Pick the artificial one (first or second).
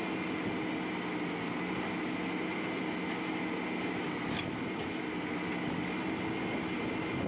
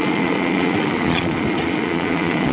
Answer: second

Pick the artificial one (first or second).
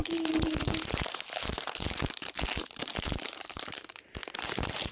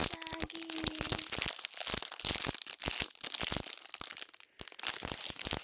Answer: first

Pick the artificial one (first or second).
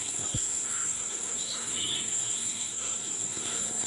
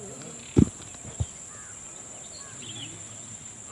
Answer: first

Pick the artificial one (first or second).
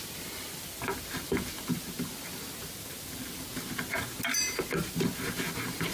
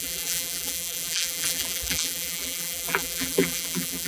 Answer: second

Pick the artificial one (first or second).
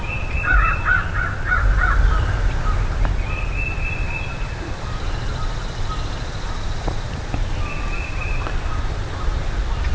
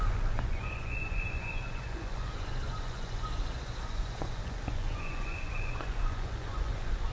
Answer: second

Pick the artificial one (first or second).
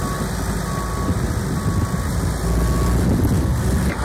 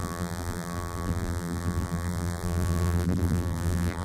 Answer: second